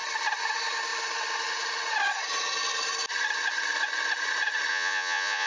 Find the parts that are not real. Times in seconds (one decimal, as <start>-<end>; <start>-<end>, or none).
4.7-5.5